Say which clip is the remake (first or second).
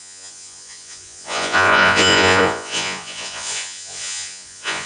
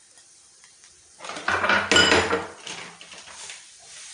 first